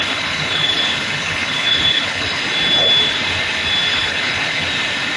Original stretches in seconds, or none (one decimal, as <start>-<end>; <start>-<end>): 2.4-3.9; 4.7-5.2